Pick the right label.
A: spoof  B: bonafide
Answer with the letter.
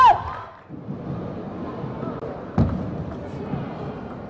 B